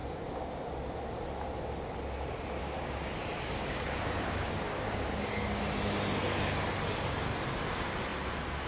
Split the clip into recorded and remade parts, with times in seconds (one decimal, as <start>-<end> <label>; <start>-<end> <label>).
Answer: 0.0-0.6 remade; 0.6-2.6 recorded; 2.6-5.6 remade; 5.6-8.7 recorded